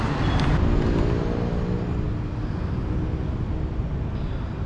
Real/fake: real